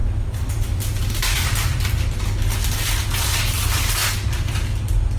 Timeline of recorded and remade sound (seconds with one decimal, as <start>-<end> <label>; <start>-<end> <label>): 0.0-2.2 remade; 2.2-5.2 recorded